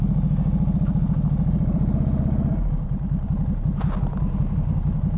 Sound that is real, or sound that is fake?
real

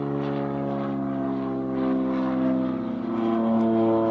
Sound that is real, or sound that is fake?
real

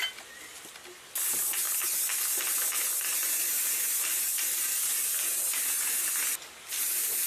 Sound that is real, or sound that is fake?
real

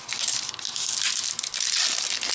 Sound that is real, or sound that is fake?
real